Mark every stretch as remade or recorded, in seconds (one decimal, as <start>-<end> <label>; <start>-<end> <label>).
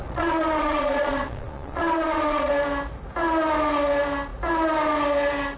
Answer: 0.0-2.5 remade; 2.5-5.6 recorded